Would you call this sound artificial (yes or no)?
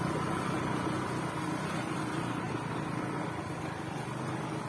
no